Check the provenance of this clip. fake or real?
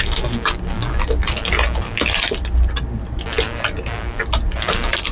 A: real